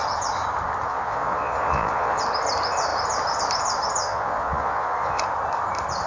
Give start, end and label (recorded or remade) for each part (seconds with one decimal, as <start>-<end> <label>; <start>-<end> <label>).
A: 0.0-0.9 recorded; 0.9-2.2 remade; 2.2-4.0 recorded; 4.0-5.2 remade; 5.2-6.1 recorded